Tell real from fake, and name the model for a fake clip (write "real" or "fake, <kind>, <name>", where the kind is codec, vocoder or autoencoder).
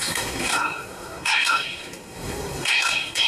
fake, codec, SNAC